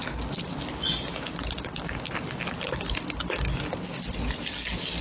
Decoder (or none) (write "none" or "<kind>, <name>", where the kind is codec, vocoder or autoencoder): none